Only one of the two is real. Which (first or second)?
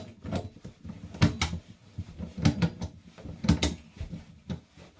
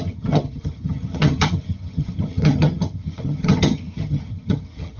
first